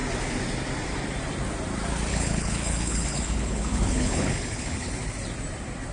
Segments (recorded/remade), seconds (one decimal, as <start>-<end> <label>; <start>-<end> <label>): 0.0-2.1 recorded; 2.1-4.9 remade; 4.9-5.9 recorded